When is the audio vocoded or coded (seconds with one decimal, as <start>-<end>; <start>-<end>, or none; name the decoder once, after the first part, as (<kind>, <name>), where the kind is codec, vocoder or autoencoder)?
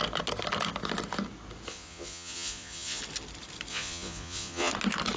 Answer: 1.7-3.0 (vocoder, Vocos); 3.7-4.7